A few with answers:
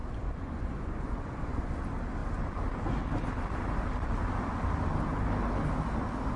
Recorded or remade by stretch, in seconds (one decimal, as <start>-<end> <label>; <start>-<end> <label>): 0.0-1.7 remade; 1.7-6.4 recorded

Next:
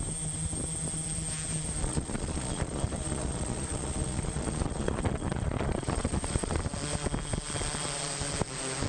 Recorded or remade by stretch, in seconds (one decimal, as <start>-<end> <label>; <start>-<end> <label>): 0.0-1.8 recorded; 1.8-6.6 remade; 6.6-8.9 recorded

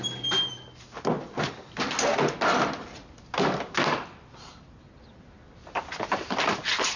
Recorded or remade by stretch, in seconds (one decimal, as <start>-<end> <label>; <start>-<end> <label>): 0.0-7.0 recorded

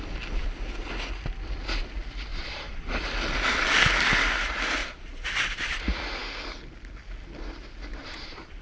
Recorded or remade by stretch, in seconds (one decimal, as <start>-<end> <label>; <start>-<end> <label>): 0.0-2.3 recorded; 2.3-3.0 remade; 3.0-4.8 recorded; 4.8-5.8 remade; 5.8-8.0 recorded; 8.0-8.6 remade